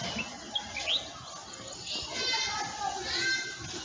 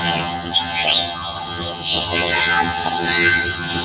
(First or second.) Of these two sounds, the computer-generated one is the second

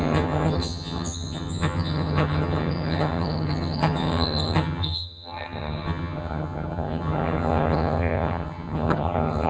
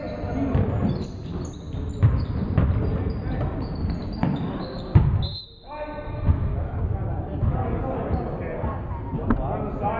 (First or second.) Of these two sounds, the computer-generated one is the first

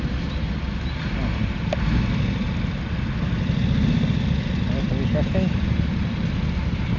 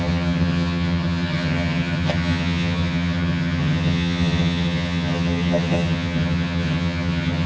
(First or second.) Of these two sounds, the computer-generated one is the second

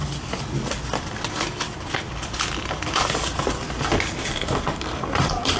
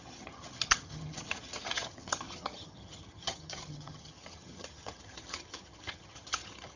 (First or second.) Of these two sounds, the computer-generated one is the second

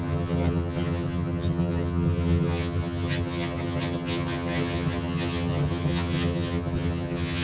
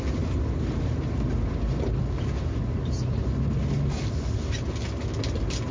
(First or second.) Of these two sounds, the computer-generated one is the first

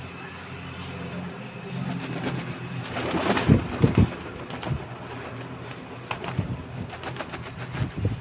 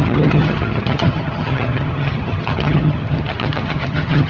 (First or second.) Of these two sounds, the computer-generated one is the second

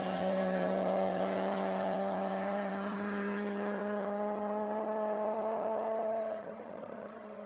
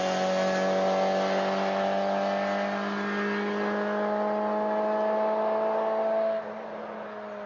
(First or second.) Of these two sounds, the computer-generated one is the first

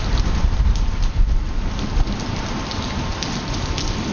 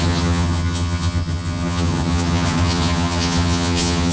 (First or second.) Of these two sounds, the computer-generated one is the second